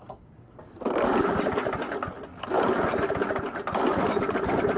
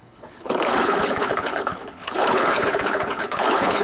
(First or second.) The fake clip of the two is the second